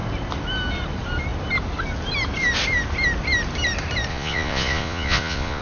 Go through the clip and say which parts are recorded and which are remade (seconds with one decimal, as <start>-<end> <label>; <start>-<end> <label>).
0.0-4.1 recorded; 4.1-5.6 remade